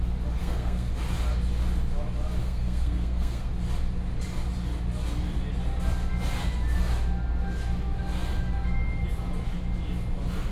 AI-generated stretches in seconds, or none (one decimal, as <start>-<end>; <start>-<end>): 0.4-0.9; 2.4-3.5